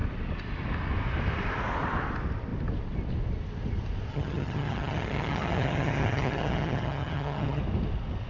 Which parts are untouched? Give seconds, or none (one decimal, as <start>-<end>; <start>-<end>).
0.0-4.1; 7.6-8.3